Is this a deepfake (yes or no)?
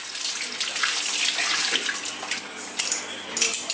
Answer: no